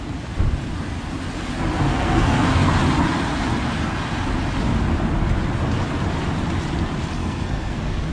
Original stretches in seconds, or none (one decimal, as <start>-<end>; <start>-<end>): 0.0-1.9; 2.7-7.2